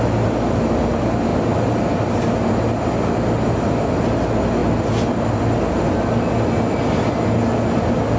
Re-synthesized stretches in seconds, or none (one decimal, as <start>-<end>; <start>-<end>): none